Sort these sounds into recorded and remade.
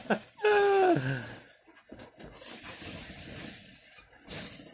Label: recorded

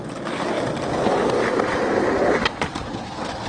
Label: recorded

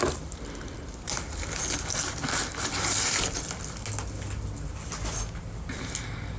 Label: recorded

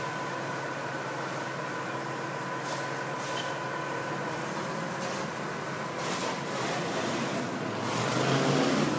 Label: recorded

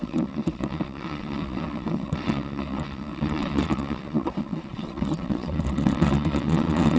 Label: remade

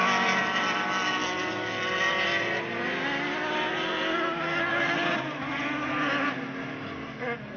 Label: recorded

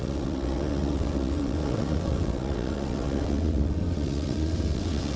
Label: remade